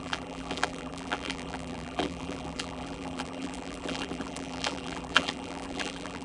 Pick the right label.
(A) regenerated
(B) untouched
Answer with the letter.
A